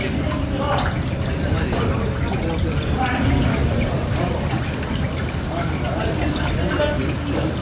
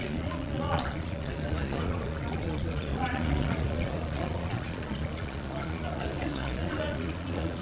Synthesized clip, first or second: second